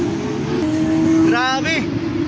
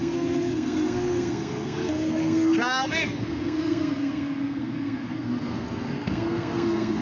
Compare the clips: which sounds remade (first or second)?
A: second